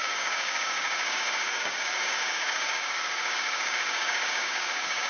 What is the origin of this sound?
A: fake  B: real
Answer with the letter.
A